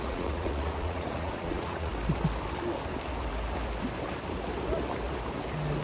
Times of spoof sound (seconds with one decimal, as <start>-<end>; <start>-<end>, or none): 0.0-1.9